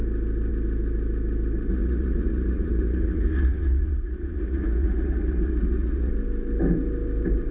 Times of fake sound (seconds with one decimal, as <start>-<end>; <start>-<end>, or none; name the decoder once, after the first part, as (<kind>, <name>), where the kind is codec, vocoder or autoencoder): 1.7-6.1 (vocoder, Vocos)